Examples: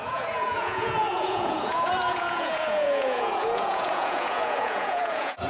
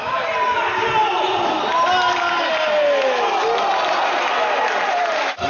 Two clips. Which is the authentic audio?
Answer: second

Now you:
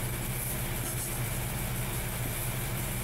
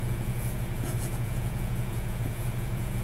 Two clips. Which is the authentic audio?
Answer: first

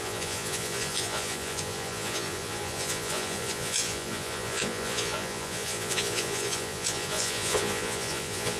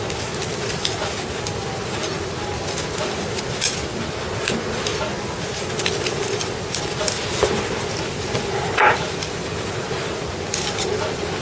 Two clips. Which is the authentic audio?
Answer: second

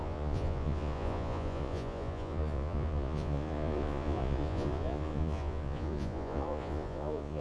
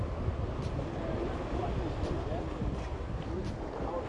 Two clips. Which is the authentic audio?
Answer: second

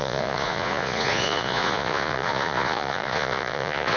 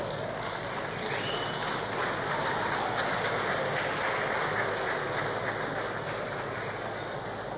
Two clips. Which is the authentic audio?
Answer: second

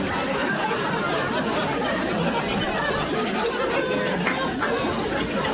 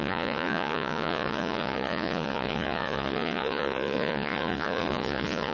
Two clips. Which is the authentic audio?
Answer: first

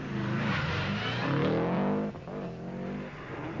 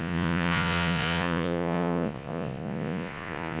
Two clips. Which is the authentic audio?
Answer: first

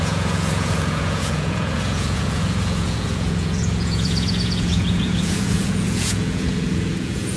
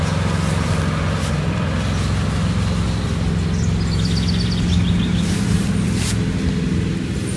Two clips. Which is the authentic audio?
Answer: second